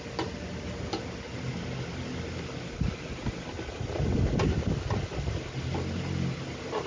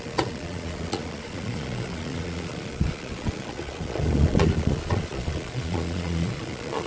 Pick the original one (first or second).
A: first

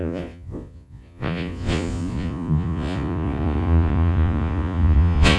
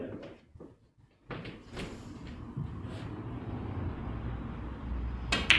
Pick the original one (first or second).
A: second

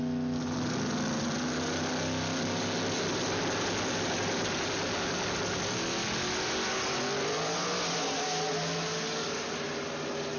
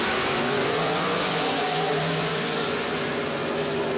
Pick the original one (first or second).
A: first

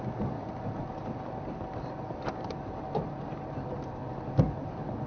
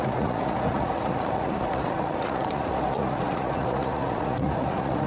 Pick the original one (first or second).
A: first